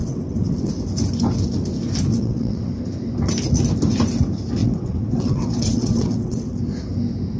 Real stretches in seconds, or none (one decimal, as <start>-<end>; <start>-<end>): 0.7-2.1; 2.7-4.6; 6.5-7.4